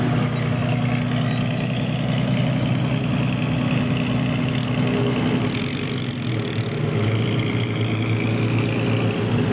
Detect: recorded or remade recorded